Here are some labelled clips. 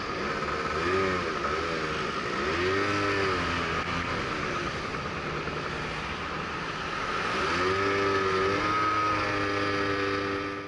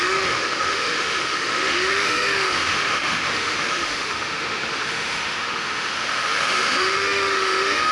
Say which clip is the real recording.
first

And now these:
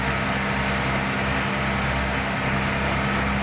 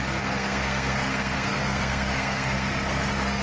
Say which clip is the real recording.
first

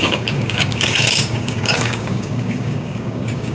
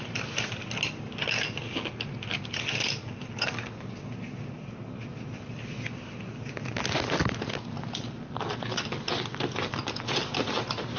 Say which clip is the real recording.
second